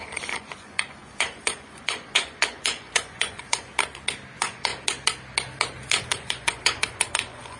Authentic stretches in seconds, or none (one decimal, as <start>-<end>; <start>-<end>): 3.7-4.3; 4.7-6.0

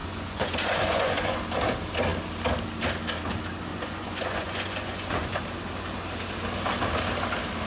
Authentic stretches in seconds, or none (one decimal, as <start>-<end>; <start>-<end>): 1.4-3.7; 5.4-7.7

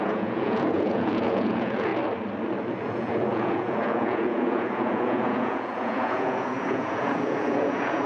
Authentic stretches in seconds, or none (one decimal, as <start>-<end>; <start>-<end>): 1.9-2.8

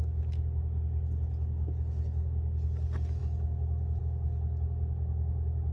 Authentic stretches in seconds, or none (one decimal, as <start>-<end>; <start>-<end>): 0.0-5.7

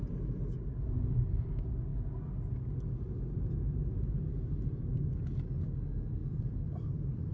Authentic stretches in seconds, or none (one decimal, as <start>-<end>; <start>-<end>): 0.0-7.3

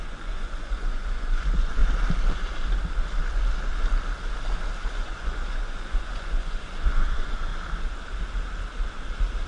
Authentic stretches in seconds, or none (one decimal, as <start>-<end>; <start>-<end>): 1.8-4.9; 7.5-9.5

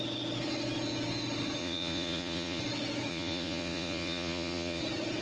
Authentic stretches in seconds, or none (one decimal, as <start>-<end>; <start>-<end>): 0.0-1.6; 2.6-3.1; 4.8-5.2

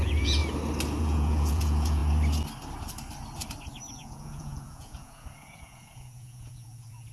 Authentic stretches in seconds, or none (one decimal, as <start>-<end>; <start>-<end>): 0.4-1.0; 2.0-3.9